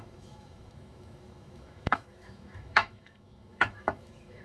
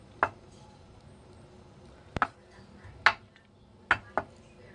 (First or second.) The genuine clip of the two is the second